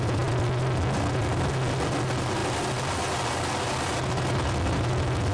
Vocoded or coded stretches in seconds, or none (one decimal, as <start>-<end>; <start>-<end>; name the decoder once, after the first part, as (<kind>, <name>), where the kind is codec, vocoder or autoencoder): none

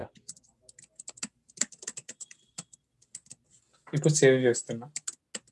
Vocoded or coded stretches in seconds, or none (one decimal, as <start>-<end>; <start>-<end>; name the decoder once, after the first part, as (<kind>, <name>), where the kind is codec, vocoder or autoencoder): 0.0-0.6 (vocoder, BigVGAN v2); 2.0-2.9

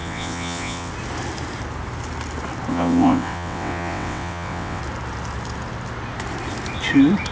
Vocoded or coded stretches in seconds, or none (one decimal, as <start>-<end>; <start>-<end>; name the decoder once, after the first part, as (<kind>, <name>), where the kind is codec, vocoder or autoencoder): 0.0-0.9 (vocoder, WaveNeXt); 2.7-4.8

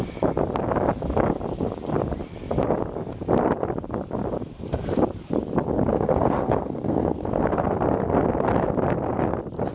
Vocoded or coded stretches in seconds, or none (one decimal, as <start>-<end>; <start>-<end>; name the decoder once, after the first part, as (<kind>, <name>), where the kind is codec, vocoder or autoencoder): 5.9-7.4 (codec, SNAC)

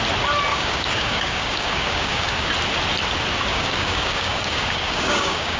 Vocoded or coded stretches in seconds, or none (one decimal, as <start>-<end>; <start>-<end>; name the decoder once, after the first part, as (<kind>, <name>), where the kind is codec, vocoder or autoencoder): 0.5-2.5 (codec, DAC); 3.5-5.6

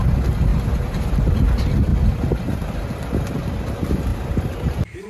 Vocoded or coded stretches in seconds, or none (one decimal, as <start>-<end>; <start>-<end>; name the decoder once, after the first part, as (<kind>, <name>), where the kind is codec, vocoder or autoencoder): 0.5-1.3 (vocoder, BigVGAN v2); 4.1-5.1

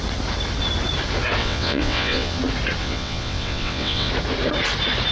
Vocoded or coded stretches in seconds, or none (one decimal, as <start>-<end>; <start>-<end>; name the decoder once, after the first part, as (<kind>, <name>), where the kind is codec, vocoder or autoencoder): 1.4-2.4 (vocoder, WaveNeXt); 2.8-4.1